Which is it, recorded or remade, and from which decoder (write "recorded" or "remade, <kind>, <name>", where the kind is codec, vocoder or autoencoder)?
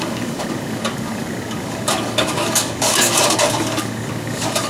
remade, codec, DAC